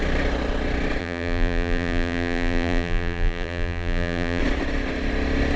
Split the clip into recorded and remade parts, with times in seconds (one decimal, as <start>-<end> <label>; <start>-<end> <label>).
0.0-1.0 recorded; 1.0-4.4 remade; 4.4-5.6 recorded